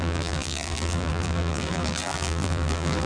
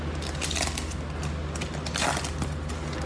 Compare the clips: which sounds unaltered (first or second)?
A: second